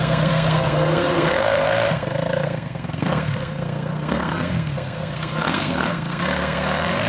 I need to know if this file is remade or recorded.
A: remade